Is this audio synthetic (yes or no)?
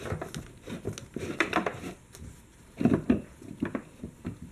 no